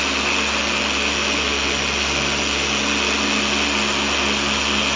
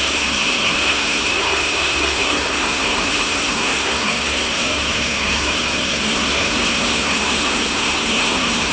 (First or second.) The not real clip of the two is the second